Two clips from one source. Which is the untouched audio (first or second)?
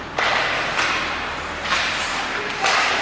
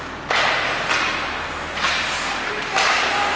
second